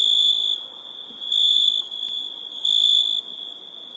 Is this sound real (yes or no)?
yes